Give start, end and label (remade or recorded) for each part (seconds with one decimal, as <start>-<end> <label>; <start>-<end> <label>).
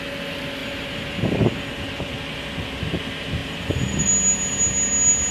0.0-0.6 recorded; 0.6-2.1 remade; 2.1-3.4 recorded; 3.4-4.1 remade; 4.1-5.3 recorded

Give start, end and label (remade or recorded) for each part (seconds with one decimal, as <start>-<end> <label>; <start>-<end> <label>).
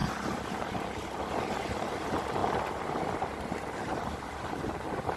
0.0-2.4 recorded; 2.4-4.8 remade; 4.8-5.2 recorded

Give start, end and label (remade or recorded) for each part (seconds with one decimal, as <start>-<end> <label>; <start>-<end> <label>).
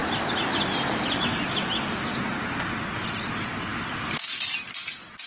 0.0-5.3 recorded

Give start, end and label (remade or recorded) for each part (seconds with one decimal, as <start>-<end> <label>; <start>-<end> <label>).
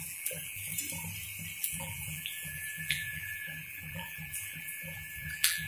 0.0-0.7 remade; 0.7-1.6 recorded; 1.6-5.7 remade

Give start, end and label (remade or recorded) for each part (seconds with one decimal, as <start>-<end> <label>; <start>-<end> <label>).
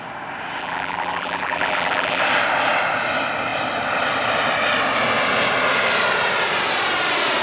0.0-0.6 recorded; 0.6-2.2 remade; 2.2-7.4 recorded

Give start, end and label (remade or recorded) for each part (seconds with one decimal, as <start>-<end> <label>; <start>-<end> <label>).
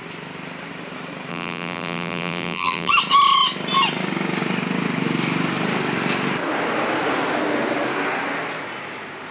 0.0-1.3 recorded; 1.3-2.9 remade; 2.9-9.3 recorded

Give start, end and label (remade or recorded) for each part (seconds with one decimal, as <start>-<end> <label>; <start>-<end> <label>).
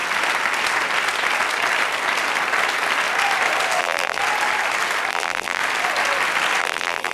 0.0-3.8 recorded; 3.8-4.2 remade; 4.2-5.1 recorded; 5.1-5.6 remade; 5.6-6.6 recorded; 6.6-7.1 remade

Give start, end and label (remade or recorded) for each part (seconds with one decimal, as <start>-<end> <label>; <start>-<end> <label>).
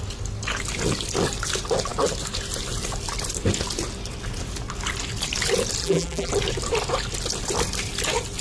0.0-5.8 recorded; 5.8-6.3 remade; 6.3-8.4 recorded